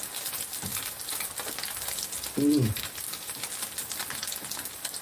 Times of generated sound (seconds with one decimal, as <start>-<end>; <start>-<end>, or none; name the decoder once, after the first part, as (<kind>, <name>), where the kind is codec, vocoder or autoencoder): none